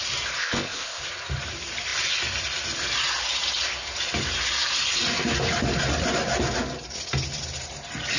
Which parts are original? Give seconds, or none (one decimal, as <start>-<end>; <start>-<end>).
0.0-0.4; 1.0-8.2

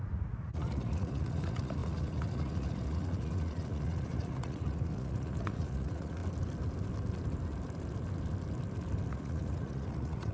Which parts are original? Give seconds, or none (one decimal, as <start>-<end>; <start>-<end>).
6.2-9.1

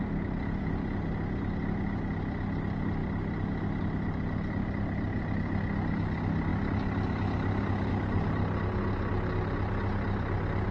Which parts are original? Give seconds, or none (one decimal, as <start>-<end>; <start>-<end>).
0.0-10.7

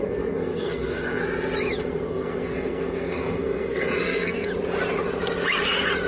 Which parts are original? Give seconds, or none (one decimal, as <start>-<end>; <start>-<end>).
1.2-1.8; 4.5-6.1